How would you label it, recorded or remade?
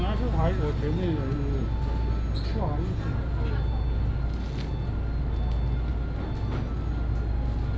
recorded